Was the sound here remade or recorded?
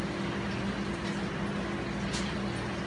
recorded